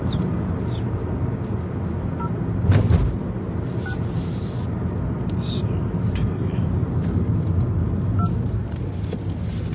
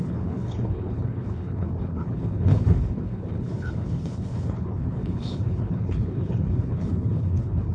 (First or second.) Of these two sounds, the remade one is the second